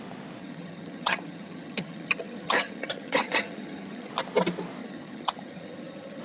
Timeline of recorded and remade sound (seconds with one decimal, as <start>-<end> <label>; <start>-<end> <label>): 0.0-0.4 recorded; 0.4-4.1 remade; 4.1-4.8 recorded; 4.8-6.2 remade